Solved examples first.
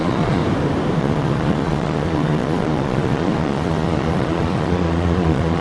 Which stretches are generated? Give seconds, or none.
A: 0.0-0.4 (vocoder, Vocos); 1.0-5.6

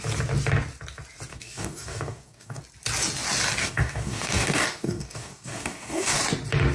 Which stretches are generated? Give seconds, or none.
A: 1.3-2.6 (codec, DAC); 3.6-6.2